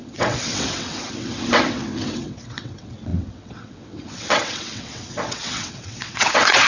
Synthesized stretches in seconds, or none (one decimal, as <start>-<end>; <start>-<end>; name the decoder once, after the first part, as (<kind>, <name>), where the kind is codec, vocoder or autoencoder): 0.0-6.7 (vocoder, WaveNeXt)